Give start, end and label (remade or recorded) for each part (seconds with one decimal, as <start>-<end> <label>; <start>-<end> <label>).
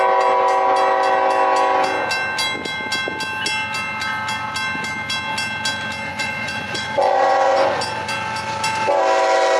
0.0-6.1 recorded; 6.1-7.8 remade; 7.8-9.6 recorded